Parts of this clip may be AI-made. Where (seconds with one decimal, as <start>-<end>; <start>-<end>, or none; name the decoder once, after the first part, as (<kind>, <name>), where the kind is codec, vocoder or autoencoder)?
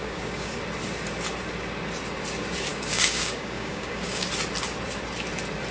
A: 0.0-0.6 (codec, DAC); 2.7-4.3